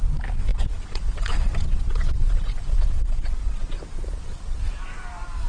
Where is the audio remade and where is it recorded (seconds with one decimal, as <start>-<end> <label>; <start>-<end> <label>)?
0.0-0.5 recorded; 0.5-3.8 remade; 3.8-5.5 recorded